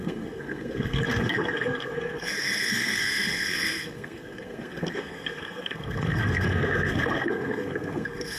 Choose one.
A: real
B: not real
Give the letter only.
B